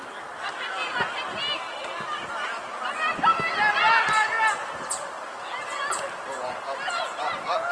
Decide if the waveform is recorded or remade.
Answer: recorded